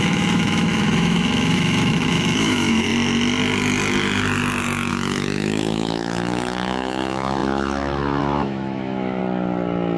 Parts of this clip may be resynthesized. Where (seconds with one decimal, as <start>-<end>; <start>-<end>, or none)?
0.0-2.9; 4.9-9.2